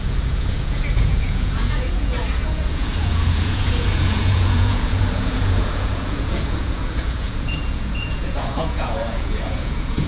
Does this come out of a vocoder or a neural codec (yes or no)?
yes